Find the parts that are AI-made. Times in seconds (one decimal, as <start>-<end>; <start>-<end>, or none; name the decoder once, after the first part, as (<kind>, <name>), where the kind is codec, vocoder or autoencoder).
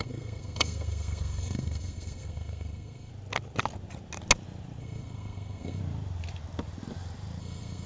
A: 0.0-3.1 (codec, SNAC); 4.8-5.8; 7.4-7.9